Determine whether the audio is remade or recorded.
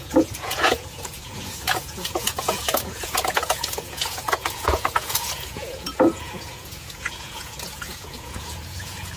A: remade